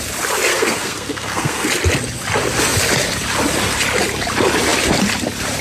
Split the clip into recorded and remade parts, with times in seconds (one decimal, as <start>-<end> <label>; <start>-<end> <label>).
0.0-0.5 recorded; 0.5-1.7 remade; 1.7-5.6 recorded